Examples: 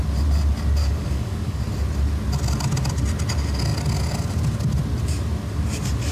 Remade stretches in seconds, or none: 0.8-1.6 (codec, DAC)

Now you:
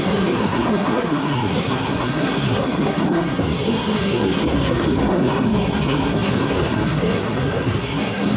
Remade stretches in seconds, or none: 0.0-8.4 (codec, SNAC)

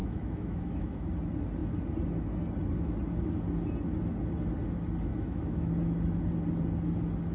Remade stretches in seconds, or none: 0.0-1.1 (autoencoder, DAC-VAE); 5.1-5.7

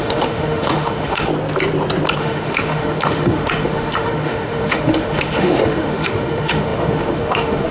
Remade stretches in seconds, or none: 0.0-1.3 (autoencoder, DAC-VAE); 2.2-7.7